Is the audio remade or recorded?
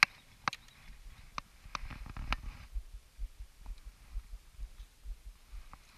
recorded